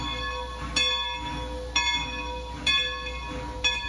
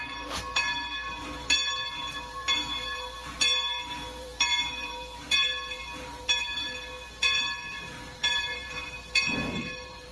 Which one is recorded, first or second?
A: first